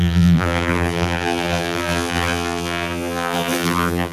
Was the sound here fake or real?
fake